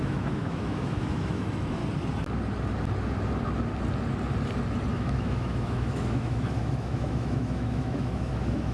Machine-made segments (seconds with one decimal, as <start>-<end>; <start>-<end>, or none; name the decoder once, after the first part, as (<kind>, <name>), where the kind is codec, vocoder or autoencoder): 0.0-1.8 (autoencoder, DAC-VAE); 4.9-8.7